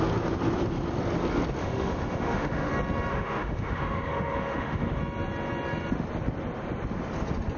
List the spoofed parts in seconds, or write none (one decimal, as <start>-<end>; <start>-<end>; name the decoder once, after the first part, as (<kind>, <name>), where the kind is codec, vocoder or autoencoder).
1.6-2.7 (autoencoder, DAC-VAE); 3.1-5.0